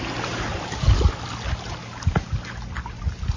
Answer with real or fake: real